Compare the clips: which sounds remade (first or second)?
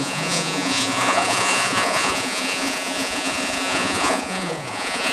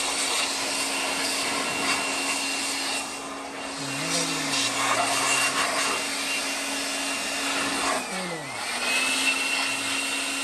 first